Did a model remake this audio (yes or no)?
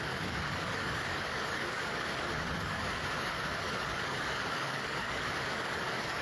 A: yes